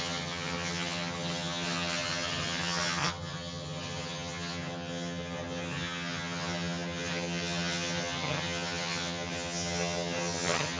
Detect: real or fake fake